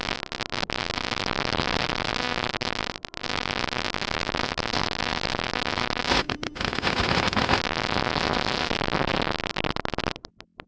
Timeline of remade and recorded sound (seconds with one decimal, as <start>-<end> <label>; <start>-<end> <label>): 0.0-6.1 recorded; 6.1-7.6 remade; 7.6-10.7 recorded